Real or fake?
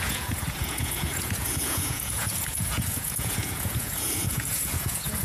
fake